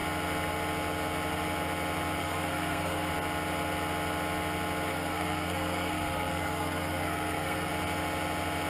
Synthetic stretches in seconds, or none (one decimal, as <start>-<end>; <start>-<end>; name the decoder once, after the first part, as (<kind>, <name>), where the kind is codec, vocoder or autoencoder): 2.2-3.1 (codec, SNAC); 4.9-7.7